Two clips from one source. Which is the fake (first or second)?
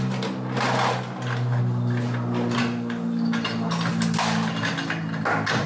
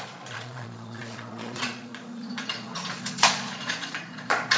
second